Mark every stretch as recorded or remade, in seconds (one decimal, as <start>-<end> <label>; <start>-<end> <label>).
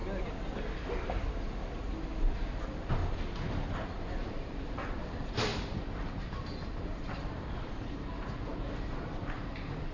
0.0-2.2 recorded; 2.2-3.0 remade; 3.0-4.4 recorded; 4.4-5.5 remade; 5.5-6.1 recorded; 6.1-9.9 remade